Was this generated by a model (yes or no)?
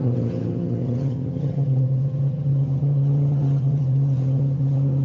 yes